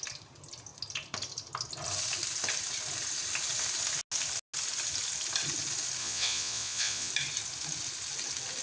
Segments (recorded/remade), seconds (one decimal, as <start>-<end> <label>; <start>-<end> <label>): 0.0-6.0 recorded; 6.0-7.1 remade; 7.1-8.6 recorded

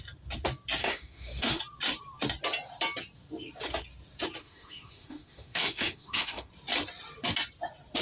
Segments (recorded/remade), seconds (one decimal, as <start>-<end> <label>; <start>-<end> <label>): 0.0-0.8 recorded; 0.8-1.6 remade; 1.6-4.4 recorded; 4.4-6.5 remade; 6.5-8.0 recorded

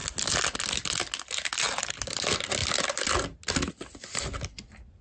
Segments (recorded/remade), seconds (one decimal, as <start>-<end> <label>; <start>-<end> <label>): 0.0-5.0 recorded

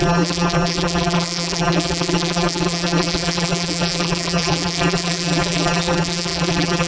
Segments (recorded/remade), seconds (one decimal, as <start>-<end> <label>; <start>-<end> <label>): 0.0-6.9 remade

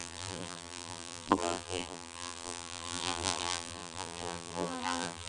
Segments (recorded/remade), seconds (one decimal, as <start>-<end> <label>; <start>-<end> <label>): 0.0-5.3 remade